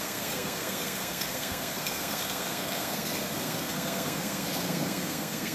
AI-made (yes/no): yes